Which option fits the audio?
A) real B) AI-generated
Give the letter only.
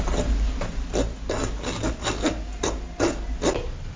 A